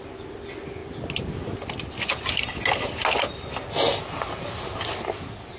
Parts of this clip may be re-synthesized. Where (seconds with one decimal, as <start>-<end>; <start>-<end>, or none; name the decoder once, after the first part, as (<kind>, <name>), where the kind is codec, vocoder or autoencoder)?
none